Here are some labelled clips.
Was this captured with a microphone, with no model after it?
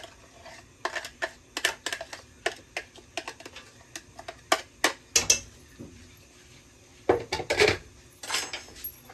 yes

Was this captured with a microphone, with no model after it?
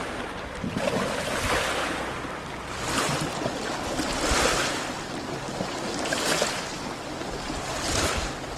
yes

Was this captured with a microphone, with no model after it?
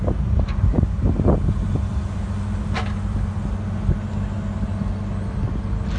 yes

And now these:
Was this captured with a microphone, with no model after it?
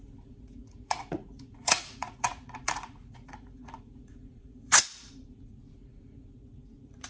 no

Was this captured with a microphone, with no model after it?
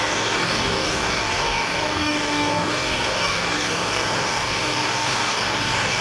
no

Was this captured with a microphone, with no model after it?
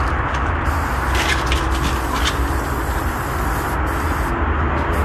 yes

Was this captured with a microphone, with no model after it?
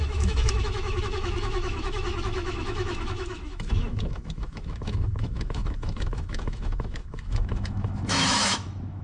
no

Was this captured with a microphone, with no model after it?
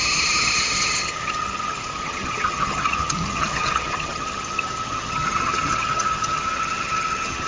no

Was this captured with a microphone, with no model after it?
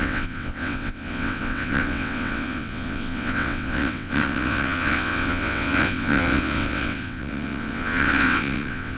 no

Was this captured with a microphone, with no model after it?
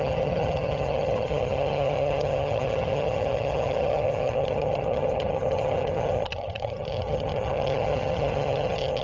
no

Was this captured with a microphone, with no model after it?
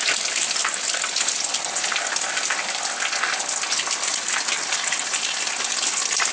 yes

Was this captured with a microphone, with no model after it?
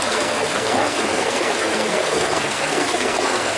no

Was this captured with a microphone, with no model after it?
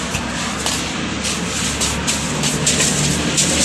yes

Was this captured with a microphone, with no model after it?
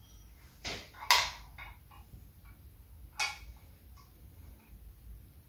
yes